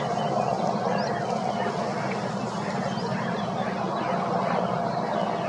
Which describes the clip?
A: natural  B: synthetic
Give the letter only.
A